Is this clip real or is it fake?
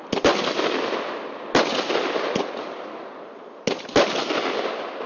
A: real